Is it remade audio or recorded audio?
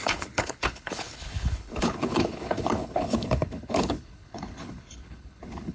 remade